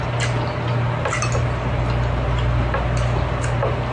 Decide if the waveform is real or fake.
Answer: real